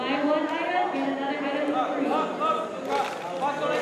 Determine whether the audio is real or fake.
real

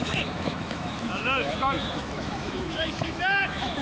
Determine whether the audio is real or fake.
fake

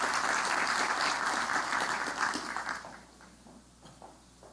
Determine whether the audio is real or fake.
real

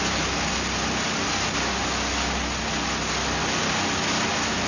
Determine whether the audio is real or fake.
real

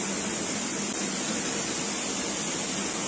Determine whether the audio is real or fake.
real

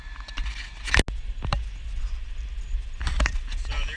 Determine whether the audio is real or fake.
real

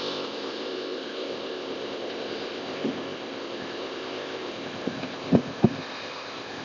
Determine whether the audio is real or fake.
fake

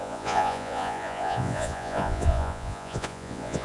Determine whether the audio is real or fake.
fake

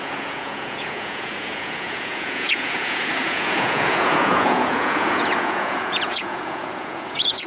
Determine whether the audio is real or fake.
fake